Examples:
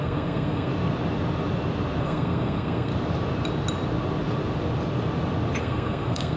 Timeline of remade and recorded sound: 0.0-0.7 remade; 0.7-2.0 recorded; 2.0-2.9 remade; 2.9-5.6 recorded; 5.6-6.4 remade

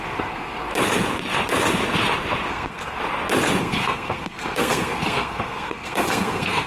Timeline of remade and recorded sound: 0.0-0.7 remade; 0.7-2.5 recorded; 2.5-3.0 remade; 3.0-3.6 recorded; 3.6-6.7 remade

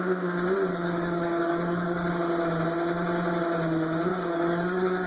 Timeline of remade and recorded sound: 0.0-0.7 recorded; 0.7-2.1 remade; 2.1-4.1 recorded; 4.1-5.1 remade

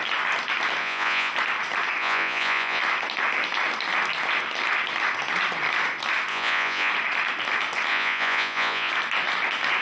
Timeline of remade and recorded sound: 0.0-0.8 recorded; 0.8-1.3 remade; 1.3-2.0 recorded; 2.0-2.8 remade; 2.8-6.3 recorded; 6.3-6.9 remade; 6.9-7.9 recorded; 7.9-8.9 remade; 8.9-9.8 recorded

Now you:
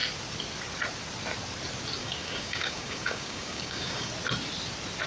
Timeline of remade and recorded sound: 0.0-2.0 recorded; 2.0-4.1 remade; 4.1-5.1 recorded

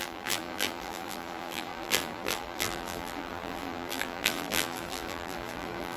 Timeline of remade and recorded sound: 0.0-6.0 remade

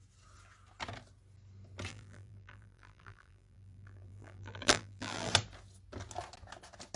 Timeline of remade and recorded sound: 0.0-1.9 recorded; 1.9-5.3 remade; 5.3-7.0 recorded